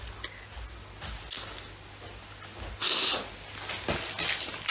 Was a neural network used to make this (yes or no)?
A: no